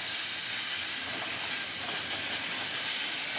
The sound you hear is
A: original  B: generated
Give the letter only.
A